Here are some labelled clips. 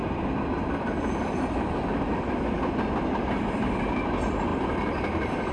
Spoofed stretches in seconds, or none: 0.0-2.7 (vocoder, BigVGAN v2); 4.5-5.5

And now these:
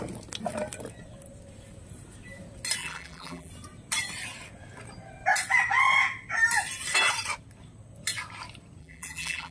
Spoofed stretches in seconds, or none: 2.8-3.5 (vocoder, BigVGAN v2); 8.8-9.5

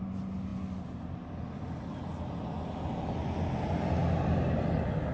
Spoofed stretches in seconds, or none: none

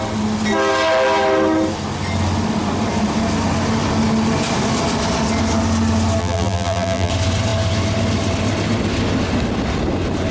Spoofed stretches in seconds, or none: 6.2-7.1 (vocoder, BigVGAN v2)

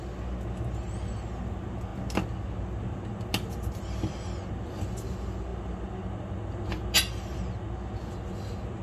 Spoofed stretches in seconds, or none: none